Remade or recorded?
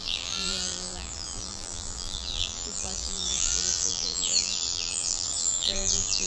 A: remade